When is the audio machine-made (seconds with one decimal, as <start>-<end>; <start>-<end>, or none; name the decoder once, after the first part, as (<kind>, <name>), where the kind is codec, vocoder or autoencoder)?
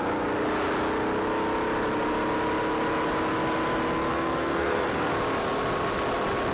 4.1-5.1 (codec, SNAC)